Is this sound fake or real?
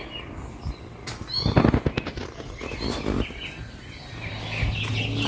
real